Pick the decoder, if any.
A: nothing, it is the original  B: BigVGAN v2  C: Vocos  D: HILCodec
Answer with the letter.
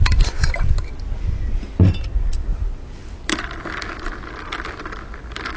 A